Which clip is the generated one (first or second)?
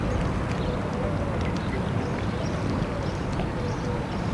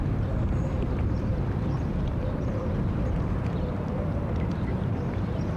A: second